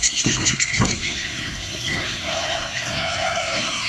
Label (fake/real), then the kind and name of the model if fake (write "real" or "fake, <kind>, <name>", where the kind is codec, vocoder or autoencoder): fake, codec, SNAC